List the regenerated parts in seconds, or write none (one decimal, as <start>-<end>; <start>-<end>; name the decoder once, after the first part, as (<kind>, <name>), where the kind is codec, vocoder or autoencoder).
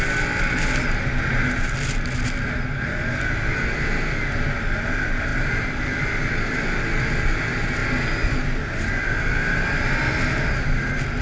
none